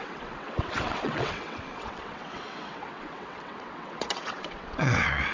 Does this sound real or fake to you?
fake